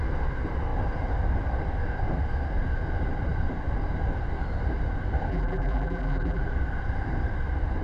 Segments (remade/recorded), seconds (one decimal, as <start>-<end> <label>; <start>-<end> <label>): 0.0-5.3 recorded; 5.3-6.4 remade; 6.4-7.8 recorded